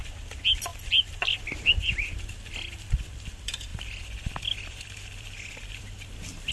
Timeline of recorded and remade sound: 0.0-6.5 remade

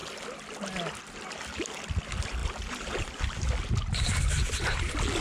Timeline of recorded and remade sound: 0.0-5.2 recorded

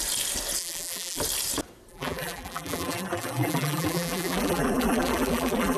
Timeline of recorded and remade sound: 0.0-0.6 recorded; 0.6-1.2 remade; 1.2-1.9 recorded; 1.9-5.8 remade

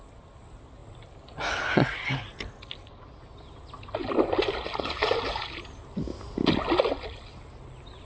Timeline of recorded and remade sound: 0.0-4.0 recorded; 4.0-5.2 remade; 5.2-8.1 recorded

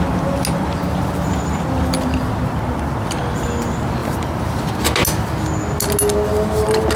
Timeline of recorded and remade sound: 0.0-4.0 recorded; 4.0-4.6 remade; 4.6-7.0 recorded